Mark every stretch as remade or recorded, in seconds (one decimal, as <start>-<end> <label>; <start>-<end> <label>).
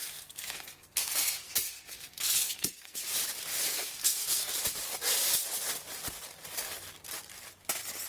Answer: 0.0-3.0 remade; 3.0-3.5 recorded; 3.5-4.5 remade; 4.5-8.1 recorded